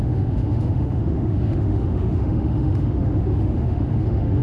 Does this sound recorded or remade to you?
remade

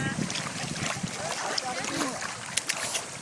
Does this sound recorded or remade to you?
recorded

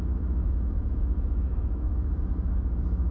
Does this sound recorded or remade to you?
remade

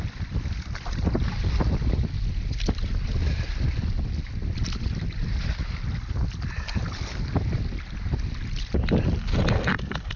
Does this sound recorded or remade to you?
recorded